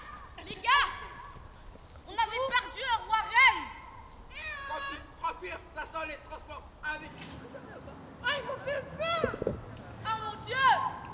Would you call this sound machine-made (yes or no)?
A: no